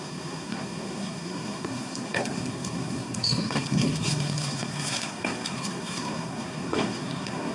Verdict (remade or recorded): remade